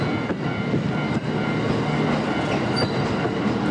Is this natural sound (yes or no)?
yes